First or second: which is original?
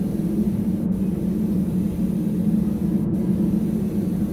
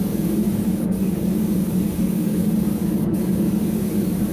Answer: first